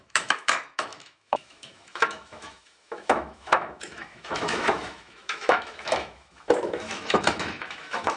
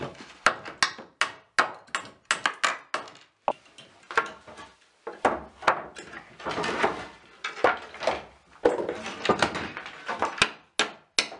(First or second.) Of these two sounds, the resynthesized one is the first